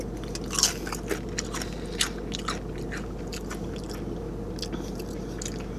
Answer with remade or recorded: recorded